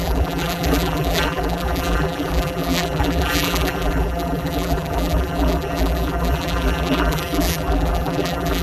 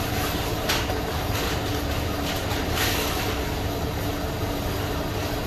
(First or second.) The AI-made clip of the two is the first